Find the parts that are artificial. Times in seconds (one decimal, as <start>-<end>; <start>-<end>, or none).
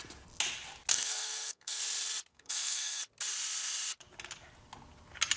0.9-1.8; 2.3-3.0